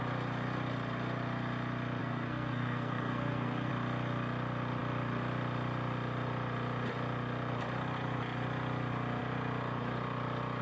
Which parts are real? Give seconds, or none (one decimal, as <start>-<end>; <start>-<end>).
0.0-2.0; 3.7-10.6